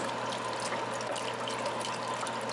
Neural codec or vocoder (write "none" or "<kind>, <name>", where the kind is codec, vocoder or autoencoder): none